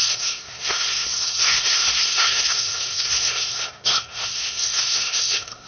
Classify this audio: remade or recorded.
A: remade